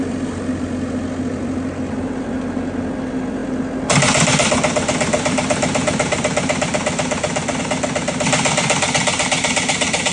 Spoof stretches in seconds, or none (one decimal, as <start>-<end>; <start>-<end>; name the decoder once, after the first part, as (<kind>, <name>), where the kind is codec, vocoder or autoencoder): none

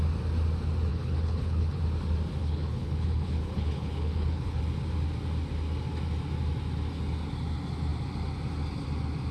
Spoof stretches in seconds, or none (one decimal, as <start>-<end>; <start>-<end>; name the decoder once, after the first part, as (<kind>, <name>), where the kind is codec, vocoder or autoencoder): 0.9-1.8 (codec, HILCodec); 2.4-4.6

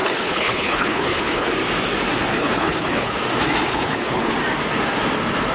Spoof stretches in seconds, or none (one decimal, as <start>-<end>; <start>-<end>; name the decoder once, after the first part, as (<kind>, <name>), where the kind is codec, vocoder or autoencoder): 0.0-1.5 (codec, HILCodec); 2.3-3.2; 3.7-4.3

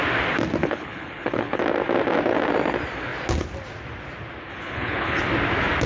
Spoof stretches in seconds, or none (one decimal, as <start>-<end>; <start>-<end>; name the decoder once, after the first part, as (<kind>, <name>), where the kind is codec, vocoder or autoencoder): 0.6-1.6 (codec, HILCodec); 4.5-5.2

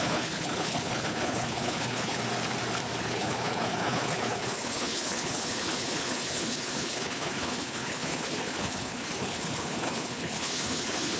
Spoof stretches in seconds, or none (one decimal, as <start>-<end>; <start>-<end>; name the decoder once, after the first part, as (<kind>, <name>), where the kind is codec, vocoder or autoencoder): 0.0-2.2 (codec, HILCodec); 3.0-11.2

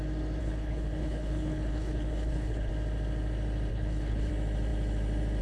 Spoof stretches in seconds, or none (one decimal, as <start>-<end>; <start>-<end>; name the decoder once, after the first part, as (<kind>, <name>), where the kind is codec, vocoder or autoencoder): 0.4-2.7 (codec, HILCodec); 3.7-4.3

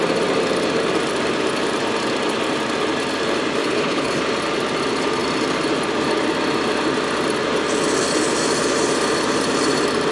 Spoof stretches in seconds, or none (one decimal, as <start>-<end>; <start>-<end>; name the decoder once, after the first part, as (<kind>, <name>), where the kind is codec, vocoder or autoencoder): 3.6-4.2 (codec, HILCodec)

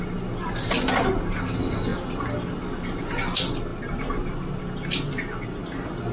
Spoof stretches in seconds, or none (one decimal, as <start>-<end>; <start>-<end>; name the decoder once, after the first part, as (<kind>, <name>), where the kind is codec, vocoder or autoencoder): none